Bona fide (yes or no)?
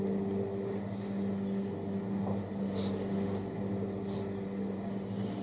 yes